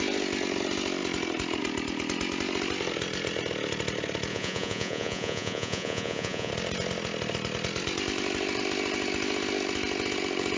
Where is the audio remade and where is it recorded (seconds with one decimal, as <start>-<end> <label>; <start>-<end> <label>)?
0.0-4.3 recorded; 4.3-6.5 remade; 6.5-10.6 recorded

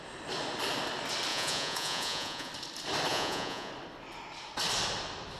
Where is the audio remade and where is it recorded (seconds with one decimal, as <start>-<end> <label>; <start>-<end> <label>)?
0.0-1.3 recorded; 1.3-2.5 remade; 2.5-3.1 recorded; 3.1-3.7 remade; 3.7-5.4 recorded

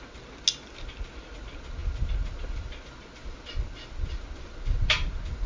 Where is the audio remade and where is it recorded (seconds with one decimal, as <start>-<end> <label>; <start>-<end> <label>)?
0.0-5.5 recorded

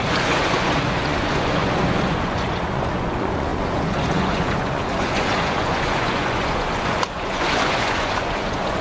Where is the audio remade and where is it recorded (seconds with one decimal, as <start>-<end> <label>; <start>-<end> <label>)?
0.0-8.8 remade

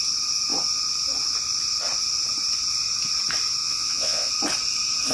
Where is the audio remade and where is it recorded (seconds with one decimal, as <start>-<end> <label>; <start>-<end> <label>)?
0.0-3.6 recorded; 3.6-4.3 remade; 4.3-5.1 recorded

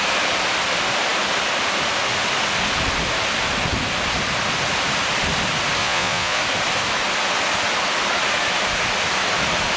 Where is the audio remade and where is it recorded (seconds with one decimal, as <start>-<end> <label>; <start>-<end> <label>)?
0.0-5.8 recorded; 5.8-6.4 remade; 6.4-9.8 recorded

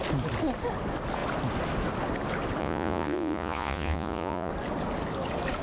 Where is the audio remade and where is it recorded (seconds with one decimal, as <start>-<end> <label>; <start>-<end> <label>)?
0.0-2.6 recorded; 2.6-4.5 remade; 4.5-5.6 recorded